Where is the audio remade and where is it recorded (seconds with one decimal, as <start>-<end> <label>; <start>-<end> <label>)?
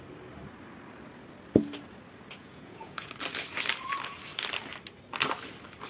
0.0-2.4 recorded; 2.4-3.1 remade; 3.1-5.9 recorded